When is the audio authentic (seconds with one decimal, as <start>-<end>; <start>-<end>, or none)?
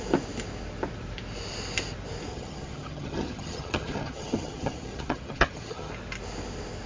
0.0-2.3; 5.9-6.9